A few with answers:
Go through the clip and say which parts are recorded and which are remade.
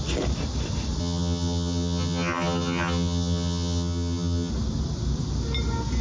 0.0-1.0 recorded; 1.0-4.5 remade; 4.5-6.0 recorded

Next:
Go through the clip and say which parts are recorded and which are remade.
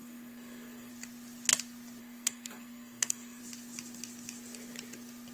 0.0-0.9 remade; 0.9-2.0 recorded; 2.0-3.4 remade; 3.4-5.3 recorded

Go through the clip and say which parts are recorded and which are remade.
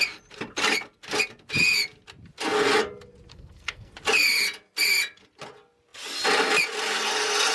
0.0-3.3 recorded; 3.3-3.9 remade; 3.9-7.5 recorded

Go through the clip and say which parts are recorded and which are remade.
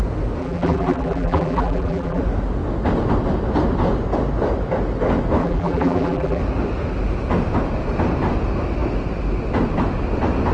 0.0-0.4 recorded; 0.4-2.2 remade; 2.2-5.4 recorded; 5.4-6.4 remade; 6.4-10.5 recorded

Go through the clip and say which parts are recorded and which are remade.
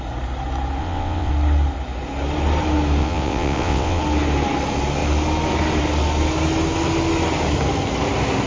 0.0-0.8 recorded; 0.8-1.3 remade; 1.3-3.0 recorded; 3.0-4.0 remade; 4.0-8.5 recorded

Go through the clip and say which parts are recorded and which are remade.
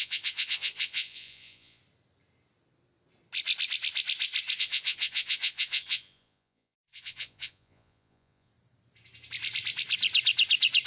0.0-1.8 remade; 1.8-4.6 recorded; 4.6-8.5 remade; 8.5-10.9 recorded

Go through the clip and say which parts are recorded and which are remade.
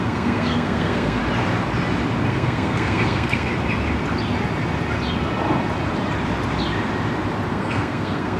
0.0-1.2 remade; 1.2-2.3 recorded; 2.3-3.5 remade; 3.5-7.5 recorded; 7.5-8.4 remade